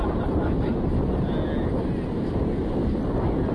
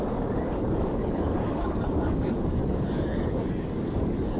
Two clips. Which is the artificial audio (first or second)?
second